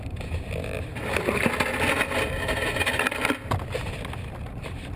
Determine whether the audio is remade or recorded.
recorded